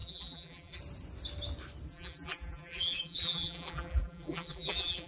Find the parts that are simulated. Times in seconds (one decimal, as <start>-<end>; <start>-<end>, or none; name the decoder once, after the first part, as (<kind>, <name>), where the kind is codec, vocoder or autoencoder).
0.0-0.8 (vocoder, BigVGAN v2); 1.9-5.1

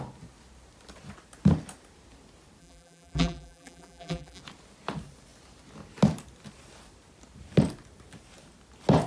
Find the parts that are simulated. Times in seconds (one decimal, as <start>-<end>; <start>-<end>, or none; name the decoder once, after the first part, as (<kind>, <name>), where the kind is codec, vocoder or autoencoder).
2.6-4.4 (vocoder, BigVGAN v2)

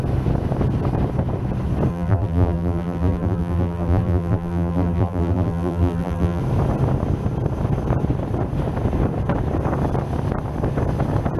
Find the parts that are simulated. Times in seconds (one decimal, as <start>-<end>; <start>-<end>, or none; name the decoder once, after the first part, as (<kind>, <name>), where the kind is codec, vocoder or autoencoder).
1.9-6.4 (vocoder, BigVGAN v2)

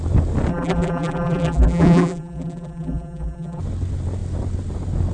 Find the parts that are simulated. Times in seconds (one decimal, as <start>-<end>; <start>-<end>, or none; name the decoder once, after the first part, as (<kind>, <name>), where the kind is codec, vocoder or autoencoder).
0.5-3.6 (vocoder, BigVGAN v2)